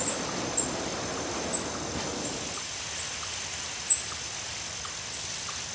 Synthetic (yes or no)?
no